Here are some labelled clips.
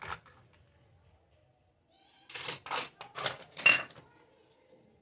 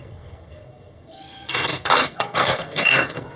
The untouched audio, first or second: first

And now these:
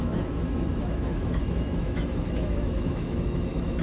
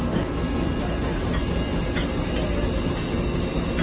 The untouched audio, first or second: second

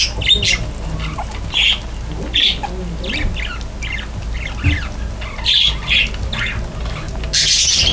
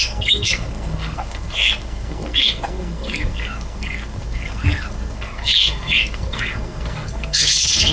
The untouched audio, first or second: first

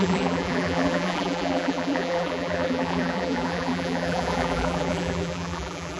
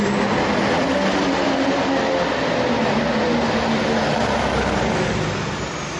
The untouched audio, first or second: second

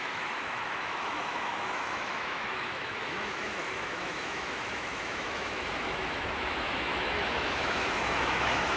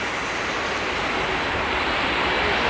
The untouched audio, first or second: second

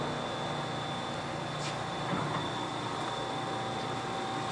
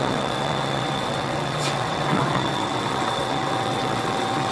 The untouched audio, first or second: first